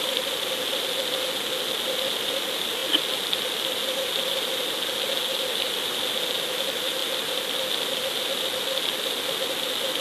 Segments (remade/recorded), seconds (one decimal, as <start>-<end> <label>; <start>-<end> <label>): 0.0-10.0 recorded